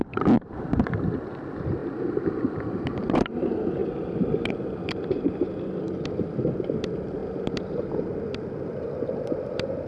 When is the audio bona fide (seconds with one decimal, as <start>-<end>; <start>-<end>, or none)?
1.8-3.0; 7.2-9.2